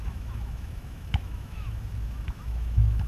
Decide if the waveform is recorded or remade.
remade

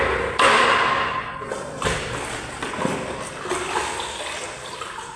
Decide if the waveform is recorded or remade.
recorded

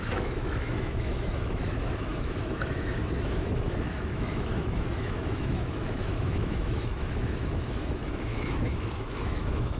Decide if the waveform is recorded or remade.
remade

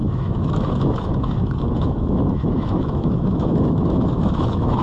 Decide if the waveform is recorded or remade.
remade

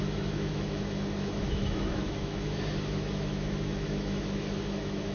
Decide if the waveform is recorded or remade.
remade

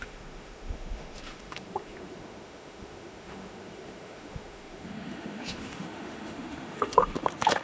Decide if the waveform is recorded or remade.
remade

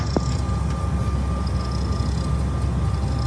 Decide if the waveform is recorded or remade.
recorded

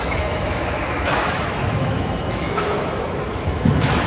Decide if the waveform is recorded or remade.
remade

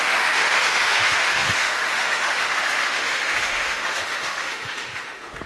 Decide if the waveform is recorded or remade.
remade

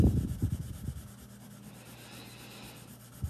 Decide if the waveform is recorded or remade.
recorded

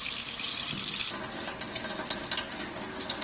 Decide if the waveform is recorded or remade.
recorded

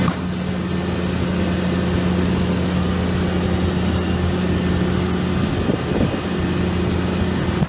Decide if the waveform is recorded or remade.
recorded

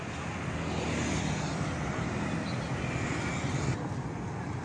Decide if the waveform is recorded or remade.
recorded